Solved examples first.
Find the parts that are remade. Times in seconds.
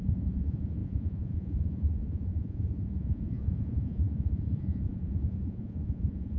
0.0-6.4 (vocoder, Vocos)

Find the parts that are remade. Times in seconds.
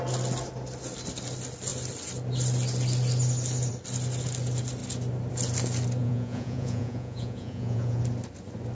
6.0-8.0 (vocoder, Vocos)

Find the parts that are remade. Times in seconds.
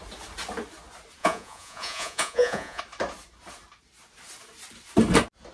1.2-2.8 (vocoder, Vocos)